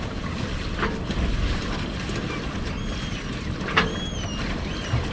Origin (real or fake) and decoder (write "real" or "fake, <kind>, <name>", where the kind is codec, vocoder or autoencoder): real